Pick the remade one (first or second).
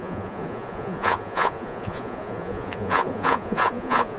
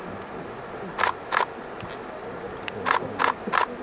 first